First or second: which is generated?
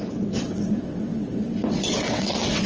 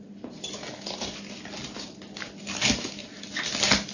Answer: first